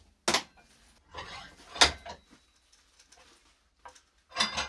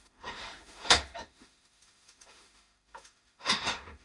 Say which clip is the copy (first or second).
second